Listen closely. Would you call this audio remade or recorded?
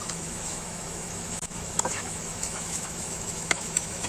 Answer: remade